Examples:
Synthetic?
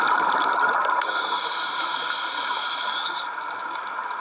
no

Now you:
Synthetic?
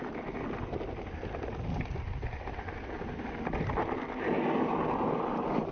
no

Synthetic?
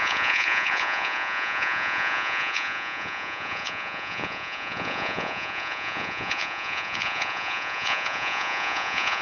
yes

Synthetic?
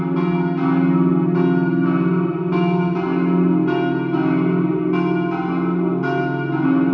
no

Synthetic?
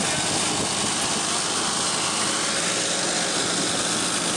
no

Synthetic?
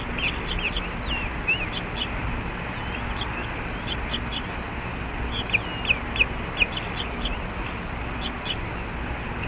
no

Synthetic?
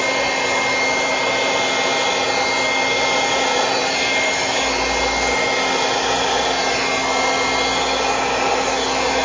no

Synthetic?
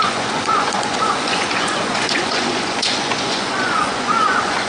yes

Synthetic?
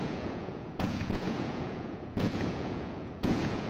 yes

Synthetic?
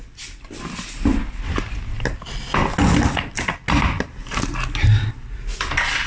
no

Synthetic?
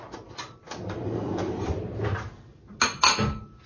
no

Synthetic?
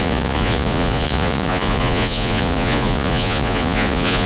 yes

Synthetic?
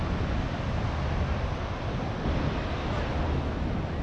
no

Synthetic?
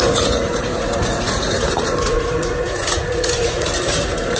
yes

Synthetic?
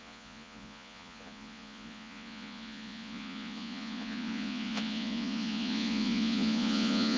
yes